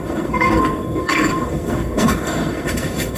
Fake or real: fake